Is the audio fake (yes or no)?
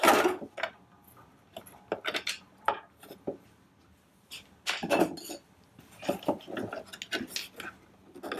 no